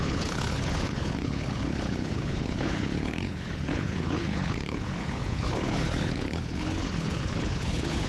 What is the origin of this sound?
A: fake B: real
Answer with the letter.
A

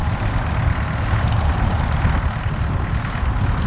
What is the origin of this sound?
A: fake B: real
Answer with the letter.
B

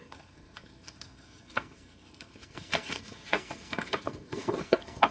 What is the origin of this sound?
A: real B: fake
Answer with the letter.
B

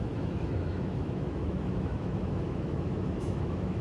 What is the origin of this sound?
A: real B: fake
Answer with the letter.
B